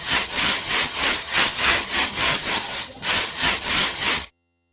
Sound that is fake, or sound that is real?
fake